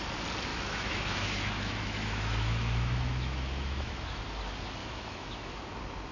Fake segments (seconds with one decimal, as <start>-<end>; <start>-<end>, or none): 0.5-4.2; 4.8-5.6